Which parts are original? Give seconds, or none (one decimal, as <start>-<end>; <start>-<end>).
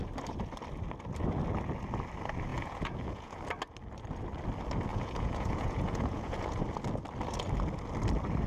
0.0-2.5; 3.4-4.9; 6.6-8.5